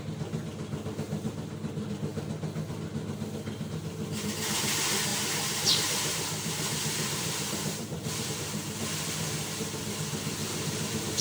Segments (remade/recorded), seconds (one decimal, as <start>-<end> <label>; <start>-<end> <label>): 0.0-5.1 recorded; 5.1-8.3 remade; 8.3-10.4 recorded; 10.4-11.2 remade